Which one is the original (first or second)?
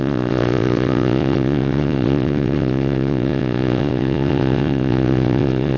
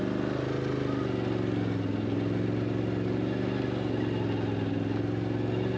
second